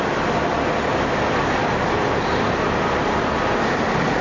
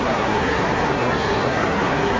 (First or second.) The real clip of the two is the first